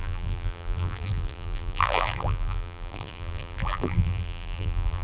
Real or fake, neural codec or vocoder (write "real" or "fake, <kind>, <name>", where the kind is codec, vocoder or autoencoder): fake, vocoder, BigVGAN v2